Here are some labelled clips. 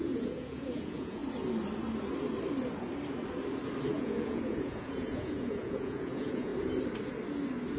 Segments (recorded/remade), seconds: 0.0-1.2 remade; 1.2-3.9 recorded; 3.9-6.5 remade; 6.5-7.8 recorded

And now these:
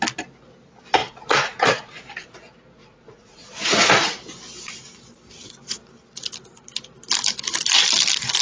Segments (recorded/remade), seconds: 0.0-1.0 recorded; 1.0-2.0 remade; 2.0-2.8 recorded; 2.8-4.2 remade; 4.2-8.4 recorded

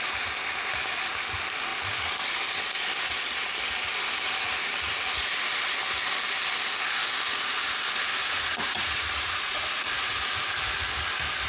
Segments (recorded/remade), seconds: 0.0-8.2 recorded; 8.2-10.2 remade; 10.2-11.5 recorded

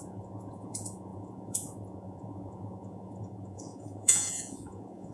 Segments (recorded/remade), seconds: 0.0-5.1 remade